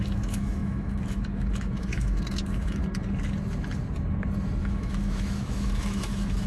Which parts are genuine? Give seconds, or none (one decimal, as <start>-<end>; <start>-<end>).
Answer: 2.8-4.6